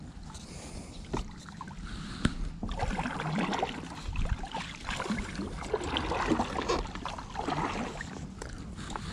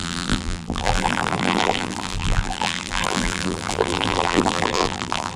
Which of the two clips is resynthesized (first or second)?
second